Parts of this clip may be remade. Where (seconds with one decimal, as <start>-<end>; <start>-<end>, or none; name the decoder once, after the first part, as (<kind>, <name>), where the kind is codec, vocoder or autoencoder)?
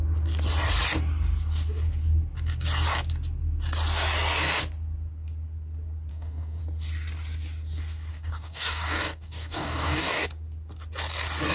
6.1-6.6 (codec, DAC); 8.1-10.2